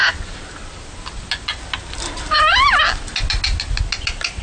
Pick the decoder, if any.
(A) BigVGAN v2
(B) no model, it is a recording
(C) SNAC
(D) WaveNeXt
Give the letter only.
B